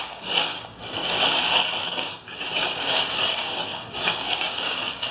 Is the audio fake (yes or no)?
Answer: yes